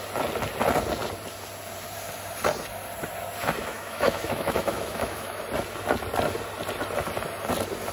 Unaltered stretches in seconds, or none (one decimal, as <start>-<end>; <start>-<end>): 0.0-3.6; 5.4-7.9

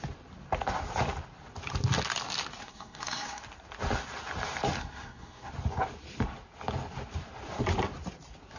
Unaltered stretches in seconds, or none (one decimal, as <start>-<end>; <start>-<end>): 0.0-2.6; 3.4-4.8; 5.5-8.6

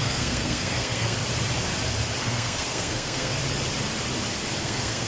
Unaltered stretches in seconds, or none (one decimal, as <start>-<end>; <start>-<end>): 1.2-2.2; 3.4-4.6

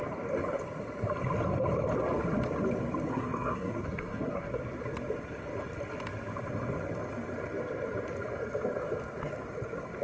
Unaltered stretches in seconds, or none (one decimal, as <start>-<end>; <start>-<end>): 0.0-3.1; 4.6-10.0

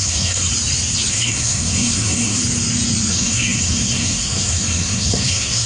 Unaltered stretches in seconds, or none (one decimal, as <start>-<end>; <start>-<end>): 0.5-1.1; 2.4-3.1

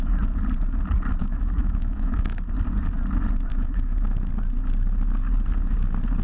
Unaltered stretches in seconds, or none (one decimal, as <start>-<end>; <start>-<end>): 0.0-1.2; 2.4-3.5; 4.3-6.2

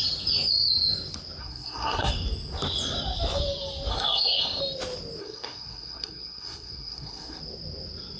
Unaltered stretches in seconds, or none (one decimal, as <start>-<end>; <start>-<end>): 0.0-1.4; 2.1-3.9; 4.6-5.2; 7.4-8.2